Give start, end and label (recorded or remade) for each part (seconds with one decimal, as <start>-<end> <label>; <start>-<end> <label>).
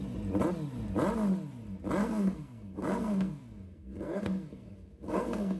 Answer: 0.0-2.0 recorded; 2.0-5.6 remade